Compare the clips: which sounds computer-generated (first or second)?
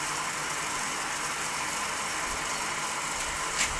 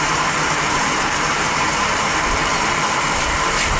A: second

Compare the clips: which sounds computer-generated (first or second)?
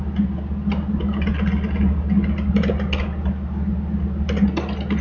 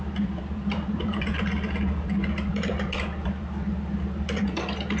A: second